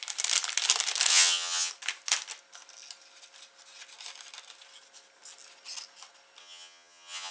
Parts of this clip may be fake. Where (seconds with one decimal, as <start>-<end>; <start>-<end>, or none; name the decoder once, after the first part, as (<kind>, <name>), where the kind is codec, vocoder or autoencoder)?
1.1-1.7 (vocoder, HiFi-GAN); 6.4-7.3